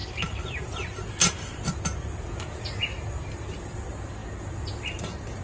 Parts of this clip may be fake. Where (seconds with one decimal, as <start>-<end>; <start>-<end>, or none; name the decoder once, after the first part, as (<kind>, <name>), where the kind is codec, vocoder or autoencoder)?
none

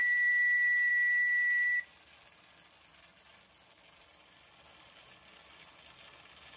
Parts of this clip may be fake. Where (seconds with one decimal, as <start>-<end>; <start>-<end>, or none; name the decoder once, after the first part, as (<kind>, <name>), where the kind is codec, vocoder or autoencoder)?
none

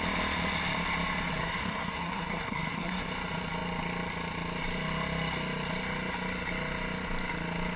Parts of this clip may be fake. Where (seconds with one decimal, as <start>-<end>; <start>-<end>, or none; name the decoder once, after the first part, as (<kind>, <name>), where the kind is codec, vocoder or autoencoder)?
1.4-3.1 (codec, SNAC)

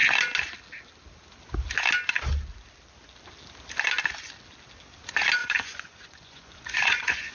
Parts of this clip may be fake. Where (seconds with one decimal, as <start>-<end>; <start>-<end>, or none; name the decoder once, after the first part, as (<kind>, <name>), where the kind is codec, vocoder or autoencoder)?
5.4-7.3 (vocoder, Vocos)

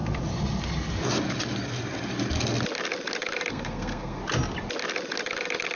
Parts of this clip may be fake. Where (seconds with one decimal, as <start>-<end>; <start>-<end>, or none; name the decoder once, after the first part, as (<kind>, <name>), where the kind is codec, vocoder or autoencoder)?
3.5-4.2 (codec, SNAC)